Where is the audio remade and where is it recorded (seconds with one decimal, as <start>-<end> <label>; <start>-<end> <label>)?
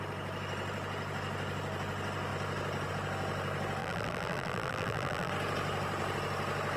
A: 0.0-3.8 recorded; 3.8-5.3 remade; 5.3-6.8 recorded